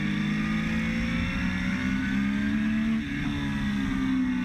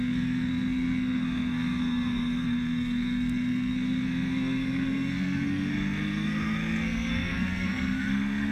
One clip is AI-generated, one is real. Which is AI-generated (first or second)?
second